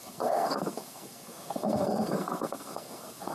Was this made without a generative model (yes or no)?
no